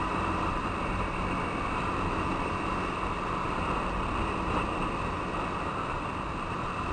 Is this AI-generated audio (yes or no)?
yes